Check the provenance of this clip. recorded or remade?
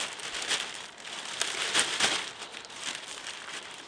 recorded